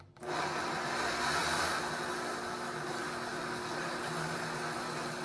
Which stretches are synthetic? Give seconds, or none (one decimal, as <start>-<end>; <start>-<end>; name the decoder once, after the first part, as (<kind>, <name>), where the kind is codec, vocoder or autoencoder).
none